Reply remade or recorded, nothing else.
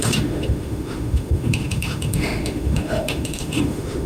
remade